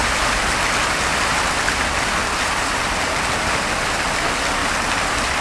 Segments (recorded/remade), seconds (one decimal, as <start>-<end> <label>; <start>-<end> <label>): 0.0-1.1 recorded; 1.1-3.9 remade; 3.9-4.6 recorded; 4.6-5.4 remade